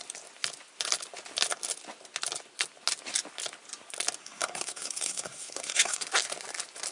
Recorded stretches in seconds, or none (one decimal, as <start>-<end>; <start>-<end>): 0.0-4.2; 6.1-6.9